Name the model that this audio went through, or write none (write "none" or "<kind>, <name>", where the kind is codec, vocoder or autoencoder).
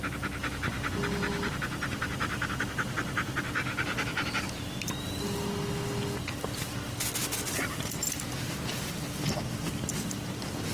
none